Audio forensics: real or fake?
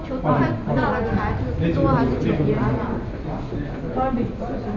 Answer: real